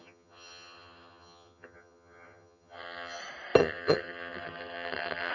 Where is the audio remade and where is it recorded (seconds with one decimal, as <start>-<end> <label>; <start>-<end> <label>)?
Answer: 0.0-3.2 remade; 3.2-3.6 recorded; 3.6-5.3 remade